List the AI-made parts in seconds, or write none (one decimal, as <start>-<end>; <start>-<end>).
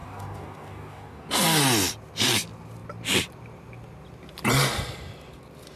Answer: 0.0-1.3